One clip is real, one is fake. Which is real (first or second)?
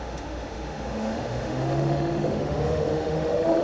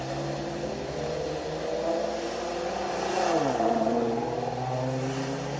second